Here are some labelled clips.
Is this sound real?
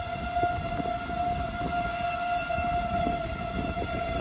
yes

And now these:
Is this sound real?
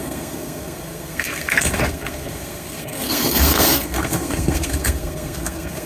no